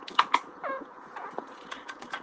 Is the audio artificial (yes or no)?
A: yes